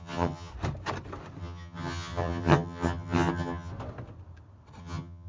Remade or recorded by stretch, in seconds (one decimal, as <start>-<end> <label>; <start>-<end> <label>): 0.0-0.5 remade; 0.5-1.4 recorded; 1.4-3.7 remade; 3.7-4.8 recorded; 4.8-5.3 remade